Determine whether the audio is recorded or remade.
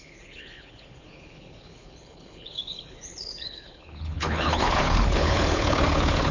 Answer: remade